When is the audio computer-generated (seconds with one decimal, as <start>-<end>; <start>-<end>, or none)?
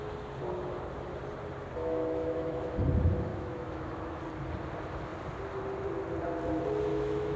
1.8-2.8; 3.3-4.2; 6.9-7.4